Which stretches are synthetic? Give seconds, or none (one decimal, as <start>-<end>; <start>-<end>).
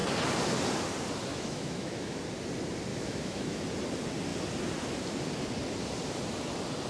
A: 1.3-2.2; 2.9-3.6